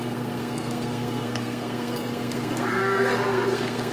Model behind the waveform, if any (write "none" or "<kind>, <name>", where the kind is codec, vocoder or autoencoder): codec, SNAC